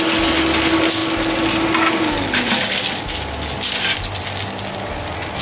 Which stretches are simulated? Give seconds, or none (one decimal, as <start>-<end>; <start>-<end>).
none